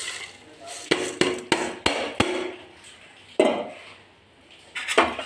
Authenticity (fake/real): real